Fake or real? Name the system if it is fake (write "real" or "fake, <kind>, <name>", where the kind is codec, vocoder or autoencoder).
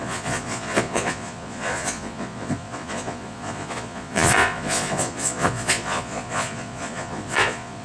fake, vocoder, Vocos